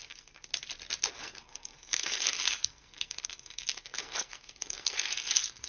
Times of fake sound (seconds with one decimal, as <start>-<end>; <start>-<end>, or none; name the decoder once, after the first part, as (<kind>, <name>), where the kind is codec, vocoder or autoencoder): 0.0-0.5 (codec, SNAC); 1.1-5.7